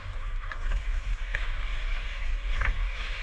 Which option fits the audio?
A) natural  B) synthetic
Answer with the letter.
B